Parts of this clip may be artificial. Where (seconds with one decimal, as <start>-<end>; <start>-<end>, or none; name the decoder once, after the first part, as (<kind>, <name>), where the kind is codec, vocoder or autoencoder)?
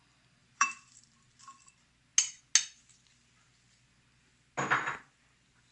0.4-1.4 (vocoder, BigVGAN v2)